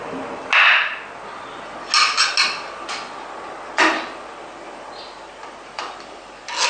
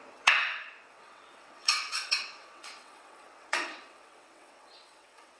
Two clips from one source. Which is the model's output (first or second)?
second